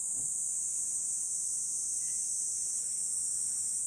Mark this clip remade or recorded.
recorded